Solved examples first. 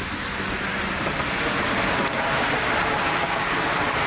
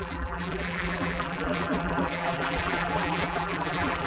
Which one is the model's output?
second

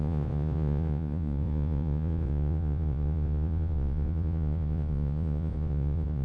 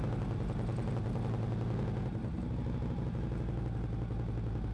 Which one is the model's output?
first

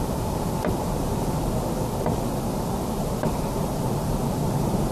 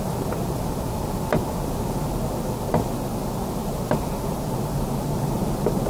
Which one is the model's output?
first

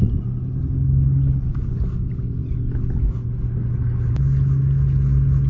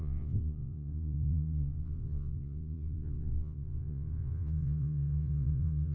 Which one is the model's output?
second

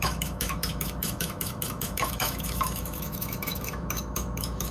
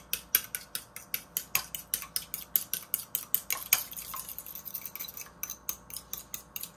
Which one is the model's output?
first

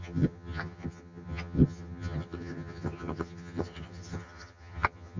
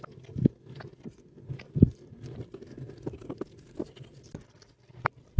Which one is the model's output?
first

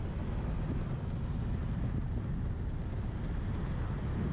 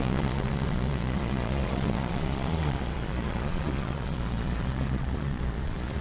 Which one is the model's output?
second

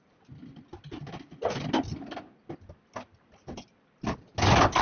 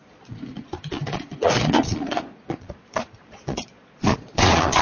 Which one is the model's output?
second